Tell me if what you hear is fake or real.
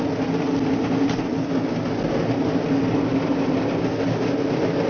real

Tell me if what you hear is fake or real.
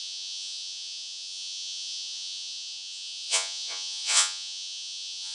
fake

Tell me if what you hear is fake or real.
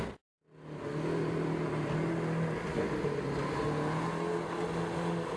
real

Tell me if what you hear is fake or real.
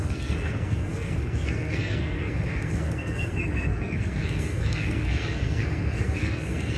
fake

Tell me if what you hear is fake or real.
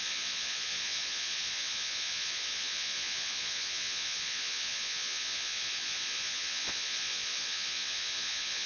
fake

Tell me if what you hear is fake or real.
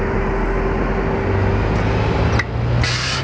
real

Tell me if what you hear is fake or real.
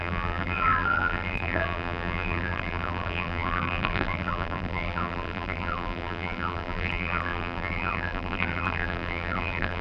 fake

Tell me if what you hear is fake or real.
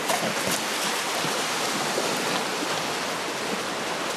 real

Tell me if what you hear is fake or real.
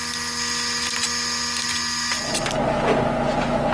real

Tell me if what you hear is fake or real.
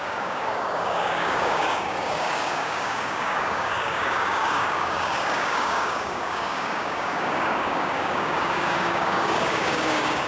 fake